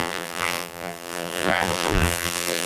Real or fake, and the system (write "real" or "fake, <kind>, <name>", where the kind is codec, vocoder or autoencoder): fake, vocoder, BigVGAN v2